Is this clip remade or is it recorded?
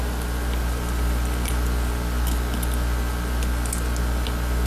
recorded